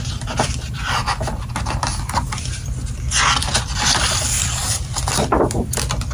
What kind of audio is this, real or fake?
real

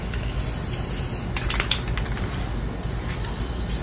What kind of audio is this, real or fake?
real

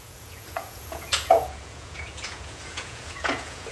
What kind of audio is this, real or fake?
fake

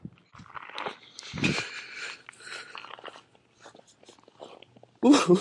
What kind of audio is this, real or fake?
real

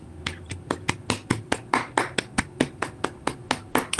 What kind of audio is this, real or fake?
real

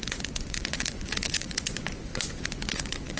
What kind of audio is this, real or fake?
fake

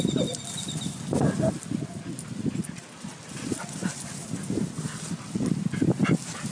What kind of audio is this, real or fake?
real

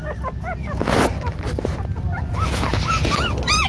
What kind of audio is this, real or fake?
real